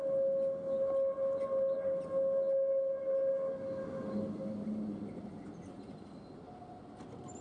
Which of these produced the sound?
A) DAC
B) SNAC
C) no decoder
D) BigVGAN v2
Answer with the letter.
C